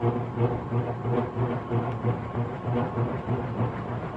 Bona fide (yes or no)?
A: yes